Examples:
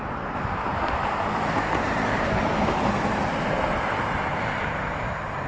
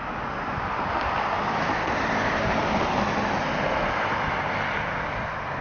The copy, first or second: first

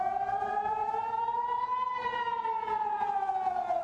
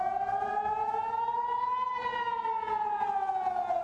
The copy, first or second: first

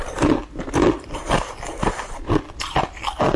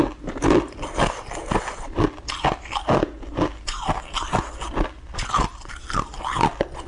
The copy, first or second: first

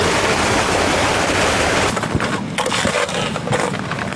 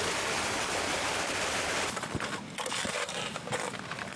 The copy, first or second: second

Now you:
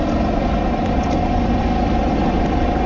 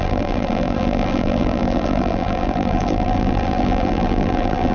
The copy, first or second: second